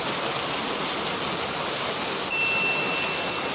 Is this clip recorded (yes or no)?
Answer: yes